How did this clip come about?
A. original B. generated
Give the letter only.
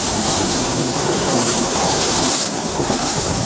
B